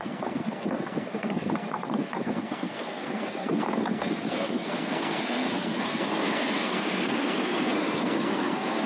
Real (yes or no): no